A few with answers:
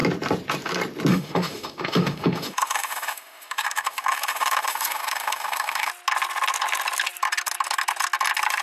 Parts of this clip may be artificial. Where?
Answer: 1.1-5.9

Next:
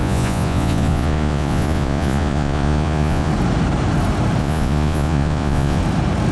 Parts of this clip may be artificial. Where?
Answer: 0.0-3.3; 4.4-5.8

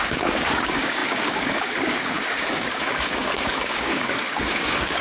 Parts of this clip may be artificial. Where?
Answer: 0.0-5.0